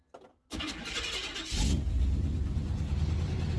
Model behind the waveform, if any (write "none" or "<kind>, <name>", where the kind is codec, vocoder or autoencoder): none